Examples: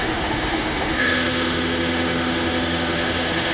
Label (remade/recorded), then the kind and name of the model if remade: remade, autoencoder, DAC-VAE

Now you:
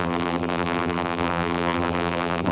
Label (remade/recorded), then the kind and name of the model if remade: remade, vocoder, BigVGAN v2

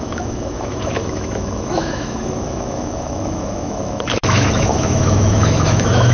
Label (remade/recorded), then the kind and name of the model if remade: remade, autoencoder, DAC-VAE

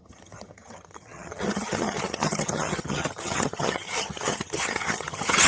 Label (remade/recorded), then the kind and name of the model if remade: remade, vocoder, HiFi-GAN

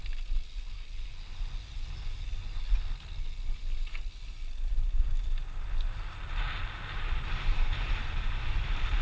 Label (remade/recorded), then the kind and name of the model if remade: recorded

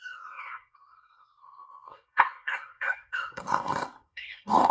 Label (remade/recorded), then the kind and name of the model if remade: remade, codec, SNAC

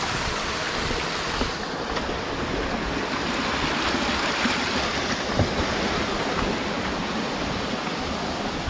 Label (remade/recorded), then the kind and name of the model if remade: recorded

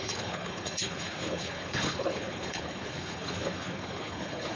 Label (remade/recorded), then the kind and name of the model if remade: remade, codec, HILCodec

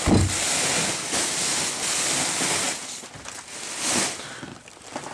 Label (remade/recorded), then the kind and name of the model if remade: recorded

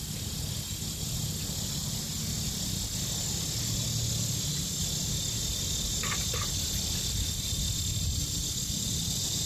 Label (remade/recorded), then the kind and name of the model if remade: recorded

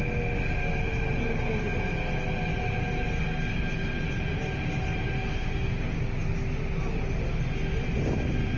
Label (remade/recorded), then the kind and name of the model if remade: recorded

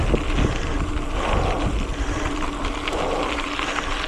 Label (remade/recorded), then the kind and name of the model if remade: recorded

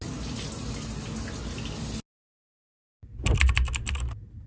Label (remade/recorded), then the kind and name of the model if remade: recorded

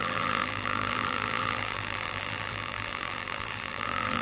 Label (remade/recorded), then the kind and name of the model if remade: remade, vocoder, BigVGAN v2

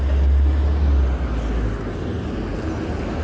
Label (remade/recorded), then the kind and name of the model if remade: recorded